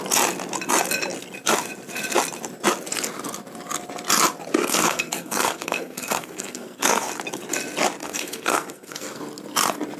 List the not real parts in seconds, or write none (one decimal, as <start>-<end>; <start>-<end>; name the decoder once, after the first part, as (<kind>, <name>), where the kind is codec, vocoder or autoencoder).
4.6-7.1 (codec, SNAC); 8.0-9.2